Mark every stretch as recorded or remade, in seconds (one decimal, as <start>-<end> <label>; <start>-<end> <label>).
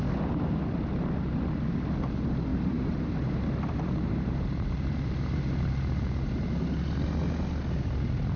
0.0-2.5 recorded; 2.5-5.6 remade; 5.6-8.4 recorded